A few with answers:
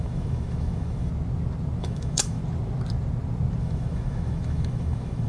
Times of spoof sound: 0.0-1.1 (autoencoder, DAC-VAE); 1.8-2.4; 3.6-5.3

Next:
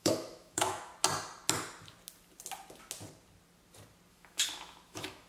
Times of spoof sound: 0.0-0.9 (autoencoder, DAC-VAE); 4.1-5.3

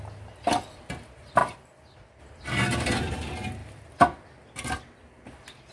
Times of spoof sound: none